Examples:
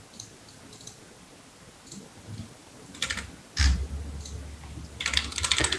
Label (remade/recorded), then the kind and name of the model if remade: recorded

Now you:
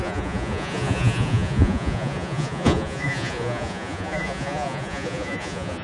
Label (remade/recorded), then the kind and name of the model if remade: remade, vocoder, Vocos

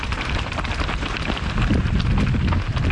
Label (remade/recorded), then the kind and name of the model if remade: recorded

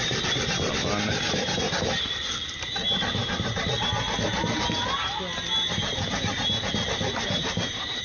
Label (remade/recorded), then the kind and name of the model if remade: recorded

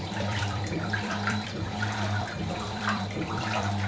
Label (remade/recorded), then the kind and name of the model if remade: remade, vocoder, BigVGAN v2